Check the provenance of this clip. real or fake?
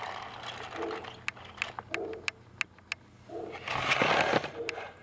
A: real